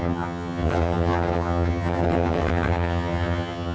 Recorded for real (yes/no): no